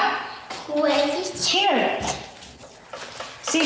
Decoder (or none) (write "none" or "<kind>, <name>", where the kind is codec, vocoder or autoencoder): none